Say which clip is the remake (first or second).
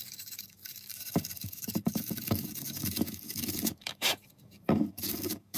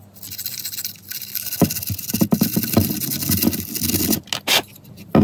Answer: first